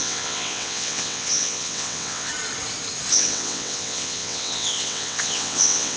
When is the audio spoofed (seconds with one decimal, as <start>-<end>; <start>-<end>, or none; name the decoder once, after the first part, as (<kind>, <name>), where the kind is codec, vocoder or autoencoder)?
0.0-2.3 (vocoder, WaveNeXt); 3.1-6.0